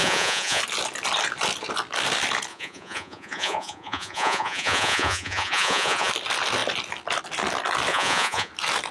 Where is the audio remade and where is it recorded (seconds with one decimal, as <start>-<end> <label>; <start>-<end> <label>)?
0.0-0.6 remade; 0.6-2.5 recorded; 2.5-6.1 remade; 6.1-7.9 recorded; 7.9-8.5 remade; 8.5-8.9 recorded